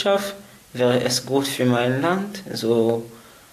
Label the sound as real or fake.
real